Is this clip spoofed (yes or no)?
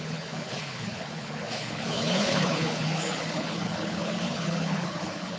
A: yes